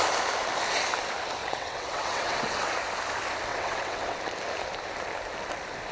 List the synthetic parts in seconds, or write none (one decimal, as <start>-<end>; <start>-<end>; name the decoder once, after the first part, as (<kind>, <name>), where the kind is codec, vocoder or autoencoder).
1.4-2.7 (vocoder, WaveNeXt); 3.5-4.2